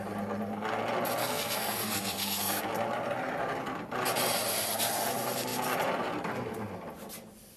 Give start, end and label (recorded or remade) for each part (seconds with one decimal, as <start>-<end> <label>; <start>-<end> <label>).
0.0-1.2 recorded; 1.2-2.6 remade; 2.6-7.6 recorded